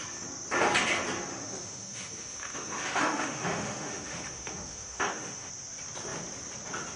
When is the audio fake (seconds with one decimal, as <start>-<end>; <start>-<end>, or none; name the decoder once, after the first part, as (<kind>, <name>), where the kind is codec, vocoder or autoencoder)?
1.3-5.5 (autoencoder, DAC-VAE)